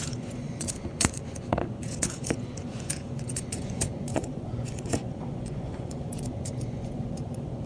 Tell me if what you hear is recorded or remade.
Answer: remade